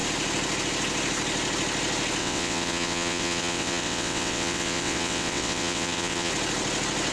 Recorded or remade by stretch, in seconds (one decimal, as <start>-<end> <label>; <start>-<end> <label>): 0.0-2.2 recorded; 2.2-6.3 remade; 6.3-7.1 recorded